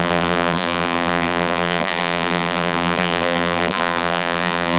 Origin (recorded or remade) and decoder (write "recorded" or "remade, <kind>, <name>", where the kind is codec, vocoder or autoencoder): remade, vocoder, BigVGAN v2